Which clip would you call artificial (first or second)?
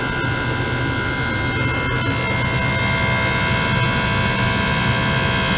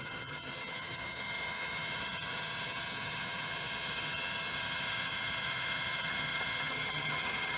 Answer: second